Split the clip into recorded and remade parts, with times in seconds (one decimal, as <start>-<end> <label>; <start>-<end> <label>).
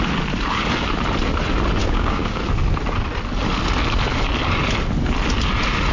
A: 0.0-1.8 recorded; 1.8-2.4 remade; 2.4-5.9 recorded